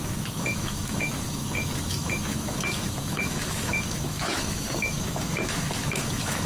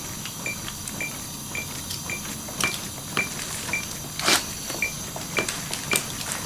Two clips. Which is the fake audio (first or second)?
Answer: first